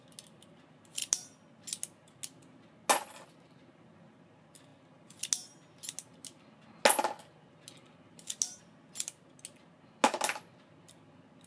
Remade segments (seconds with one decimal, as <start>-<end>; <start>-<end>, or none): none